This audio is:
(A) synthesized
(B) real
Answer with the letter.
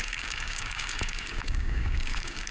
A